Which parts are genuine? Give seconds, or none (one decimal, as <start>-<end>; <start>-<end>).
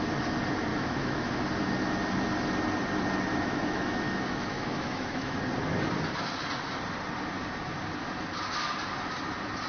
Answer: 0.0-0.7; 1.3-3.3; 5.4-9.7